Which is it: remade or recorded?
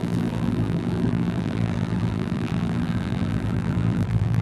remade